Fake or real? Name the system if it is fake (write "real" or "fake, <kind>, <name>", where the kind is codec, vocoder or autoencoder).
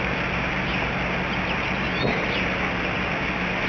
real